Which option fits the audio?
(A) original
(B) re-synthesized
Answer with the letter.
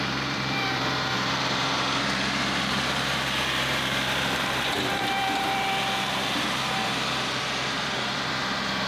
B